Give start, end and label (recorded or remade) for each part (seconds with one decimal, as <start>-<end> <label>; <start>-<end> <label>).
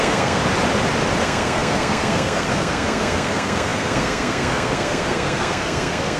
0.0-0.4 remade; 0.4-1.2 recorded; 1.2-6.2 remade